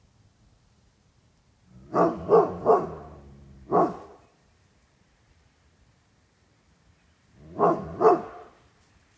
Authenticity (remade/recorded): recorded